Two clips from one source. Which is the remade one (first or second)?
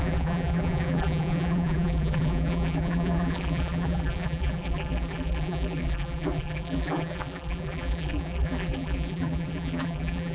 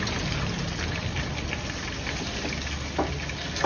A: first